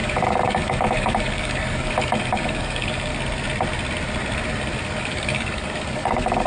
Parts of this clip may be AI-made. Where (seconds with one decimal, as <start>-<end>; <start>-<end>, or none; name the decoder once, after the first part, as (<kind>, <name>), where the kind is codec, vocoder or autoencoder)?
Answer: 0.0-3.1 (codec, DAC); 5.0-6.5